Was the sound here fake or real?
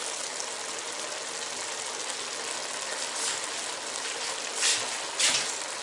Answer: real